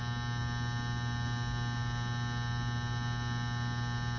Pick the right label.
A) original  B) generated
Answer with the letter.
A